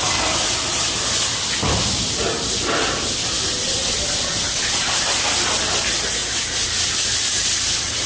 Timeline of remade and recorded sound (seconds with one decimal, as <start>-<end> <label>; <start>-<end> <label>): 0.0-8.1 recorded